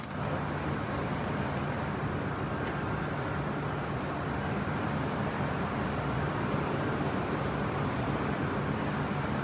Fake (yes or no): no